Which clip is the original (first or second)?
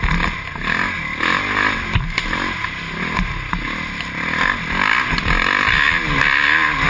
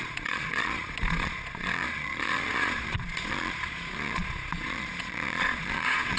first